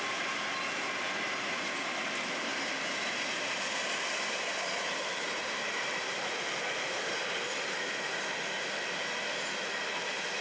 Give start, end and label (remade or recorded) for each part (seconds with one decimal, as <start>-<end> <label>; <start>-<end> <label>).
0.0-10.4 recorded